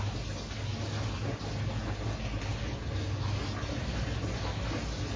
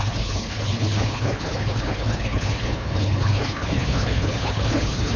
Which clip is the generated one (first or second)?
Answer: second